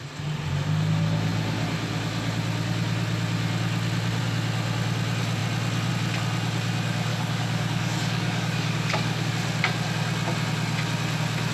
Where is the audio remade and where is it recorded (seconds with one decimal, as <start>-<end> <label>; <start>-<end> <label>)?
0.0-7.1 recorded; 7.1-9.3 remade; 9.3-11.5 recorded

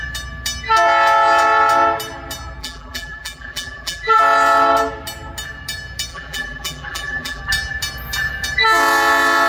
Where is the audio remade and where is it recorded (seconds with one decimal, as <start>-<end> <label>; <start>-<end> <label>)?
0.0-2.6 recorded; 2.6-4.2 remade; 4.2-6.1 recorded; 6.1-7.4 remade; 7.4-9.5 recorded

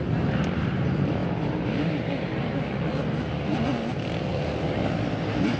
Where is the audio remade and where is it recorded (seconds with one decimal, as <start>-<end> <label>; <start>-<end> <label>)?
0.0-1.2 recorded; 1.2-2.5 remade; 2.5-4.3 recorded; 4.3-4.8 remade; 4.8-5.6 recorded

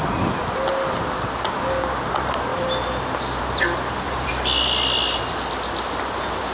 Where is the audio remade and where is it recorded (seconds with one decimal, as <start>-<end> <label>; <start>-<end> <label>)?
0.0-2.5 recorded; 2.5-4.3 remade; 4.3-6.5 recorded

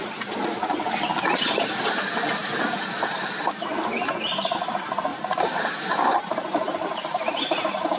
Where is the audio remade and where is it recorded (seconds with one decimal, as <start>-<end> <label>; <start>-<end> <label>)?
0.0-5.1 recorded; 5.1-8.0 remade

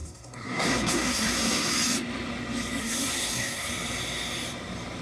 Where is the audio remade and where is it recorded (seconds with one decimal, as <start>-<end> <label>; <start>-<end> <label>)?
0.0-1.7 remade; 1.7-2.8 recorded; 2.8-3.7 remade; 3.7-5.0 recorded